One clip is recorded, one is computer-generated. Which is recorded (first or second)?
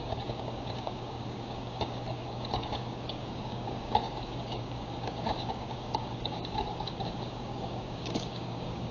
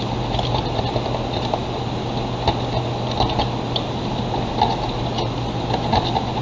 second